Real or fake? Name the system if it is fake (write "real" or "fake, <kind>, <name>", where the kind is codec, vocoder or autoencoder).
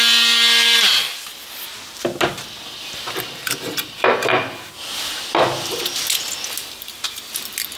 real